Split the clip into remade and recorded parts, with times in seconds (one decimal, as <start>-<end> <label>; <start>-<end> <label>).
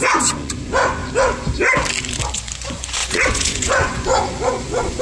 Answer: 0.0-1.0 remade; 1.0-2.3 recorded; 2.3-5.0 remade